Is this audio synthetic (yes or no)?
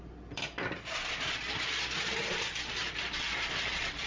no